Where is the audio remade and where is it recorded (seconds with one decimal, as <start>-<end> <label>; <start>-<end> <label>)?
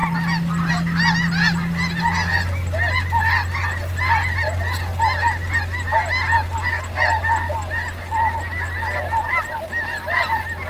0.0-10.7 recorded